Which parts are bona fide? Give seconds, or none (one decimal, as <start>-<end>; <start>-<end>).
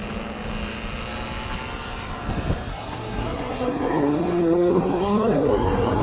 0.0-2.7